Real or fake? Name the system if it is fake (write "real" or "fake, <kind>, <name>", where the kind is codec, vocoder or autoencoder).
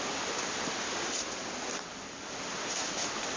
real